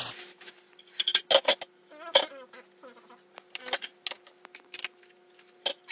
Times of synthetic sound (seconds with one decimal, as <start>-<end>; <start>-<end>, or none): none